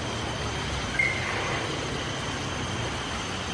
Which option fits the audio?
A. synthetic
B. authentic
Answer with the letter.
B